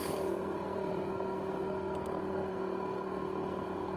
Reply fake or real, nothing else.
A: fake